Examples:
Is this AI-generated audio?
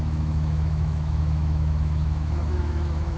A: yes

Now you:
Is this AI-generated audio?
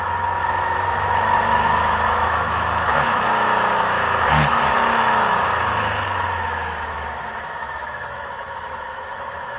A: yes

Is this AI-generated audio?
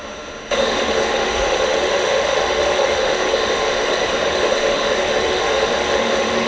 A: yes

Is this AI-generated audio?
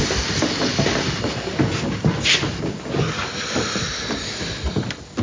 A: no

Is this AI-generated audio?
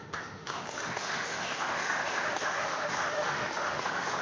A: yes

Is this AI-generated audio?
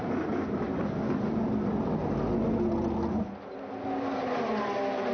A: no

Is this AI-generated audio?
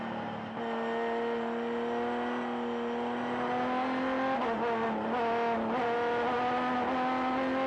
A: no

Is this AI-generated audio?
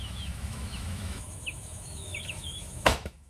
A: yes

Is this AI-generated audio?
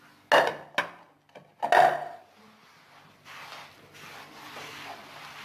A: no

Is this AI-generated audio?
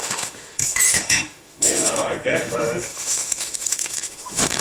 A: yes